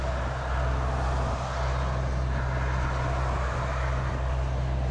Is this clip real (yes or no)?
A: yes